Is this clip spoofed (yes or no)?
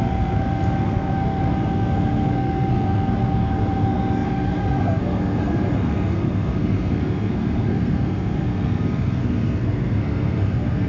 yes